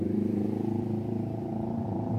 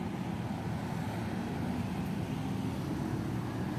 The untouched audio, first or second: second